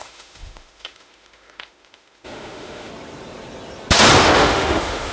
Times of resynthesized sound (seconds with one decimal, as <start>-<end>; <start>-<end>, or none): 0.0-2.9; 4.2-5.1